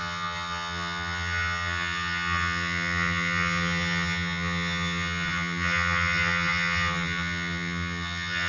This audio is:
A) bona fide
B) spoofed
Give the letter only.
B